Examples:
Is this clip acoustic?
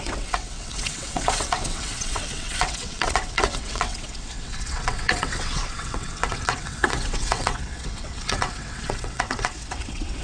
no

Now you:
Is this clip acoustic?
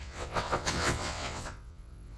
no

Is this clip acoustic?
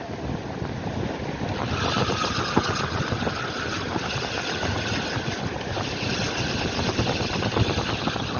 yes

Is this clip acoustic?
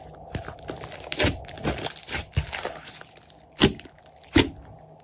yes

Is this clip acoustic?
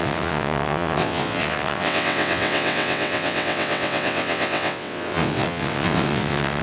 no